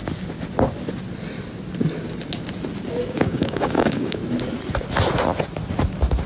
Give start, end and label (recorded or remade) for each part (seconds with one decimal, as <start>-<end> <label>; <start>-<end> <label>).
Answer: 0.0-3.1 recorded; 3.1-4.2 remade; 4.2-6.3 recorded